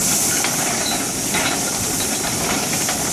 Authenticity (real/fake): real